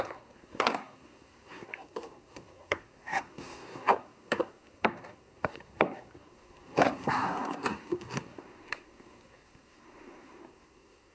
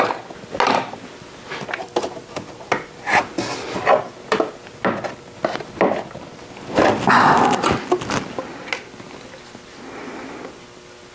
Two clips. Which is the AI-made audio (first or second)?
first